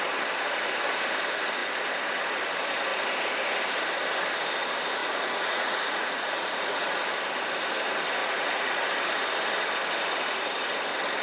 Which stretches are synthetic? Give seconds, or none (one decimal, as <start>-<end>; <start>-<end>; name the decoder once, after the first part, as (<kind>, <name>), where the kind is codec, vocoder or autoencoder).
5.0-7.0 (vocoder, Vocos); 8.2-8.8